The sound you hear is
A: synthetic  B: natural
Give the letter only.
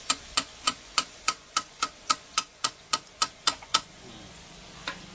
A